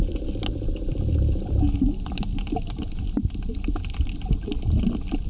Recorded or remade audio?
recorded